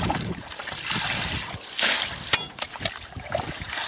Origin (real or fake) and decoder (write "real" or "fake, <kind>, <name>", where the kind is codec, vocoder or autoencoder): real